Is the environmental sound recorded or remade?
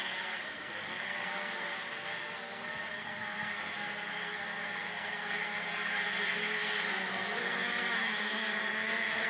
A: remade